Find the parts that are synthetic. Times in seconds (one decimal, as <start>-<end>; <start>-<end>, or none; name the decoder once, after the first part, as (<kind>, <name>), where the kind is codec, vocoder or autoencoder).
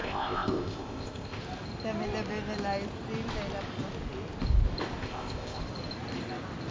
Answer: 0.0-1.4 (codec, ZipCodec); 5.0-5.6